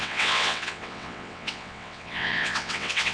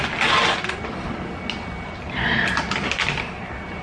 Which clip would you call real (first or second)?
second